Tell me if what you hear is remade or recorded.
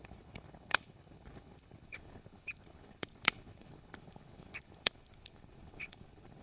remade